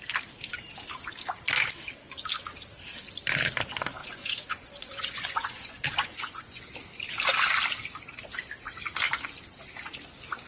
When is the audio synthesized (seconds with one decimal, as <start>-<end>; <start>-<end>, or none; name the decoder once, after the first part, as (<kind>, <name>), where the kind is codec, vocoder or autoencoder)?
4.0-6.6 (vocoder, Vocos)